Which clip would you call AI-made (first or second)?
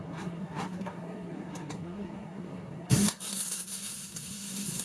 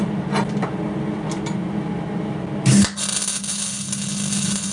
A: first